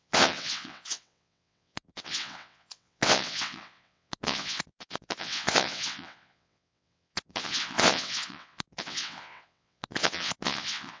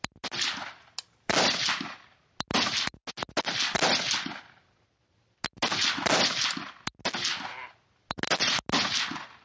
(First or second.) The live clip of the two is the second